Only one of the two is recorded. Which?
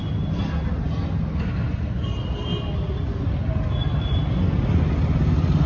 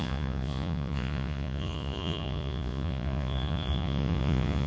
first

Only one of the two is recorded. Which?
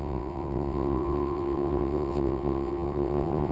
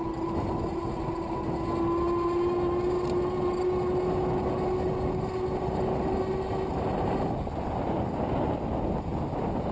second